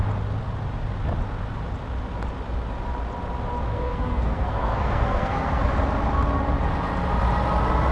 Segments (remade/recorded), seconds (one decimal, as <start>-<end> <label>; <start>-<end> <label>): 0.0-3.7 recorded; 3.7-5.6 remade; 5.6-7.9 recorded